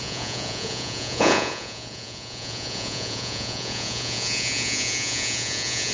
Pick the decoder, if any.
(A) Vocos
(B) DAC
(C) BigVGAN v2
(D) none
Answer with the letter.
A